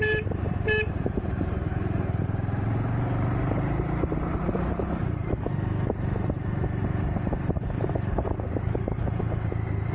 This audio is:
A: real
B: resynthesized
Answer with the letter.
B